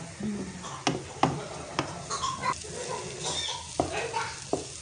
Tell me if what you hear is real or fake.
real